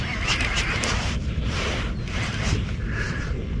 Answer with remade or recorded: recorded